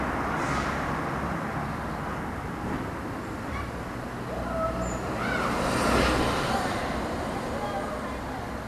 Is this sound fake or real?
real